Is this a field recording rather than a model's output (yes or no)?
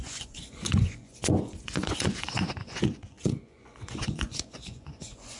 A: no